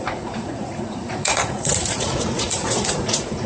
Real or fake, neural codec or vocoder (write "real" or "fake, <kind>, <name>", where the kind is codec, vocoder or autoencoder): fake, vocoder, Vocos